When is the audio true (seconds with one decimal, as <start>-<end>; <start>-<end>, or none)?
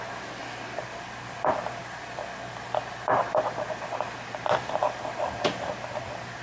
0.0-6.4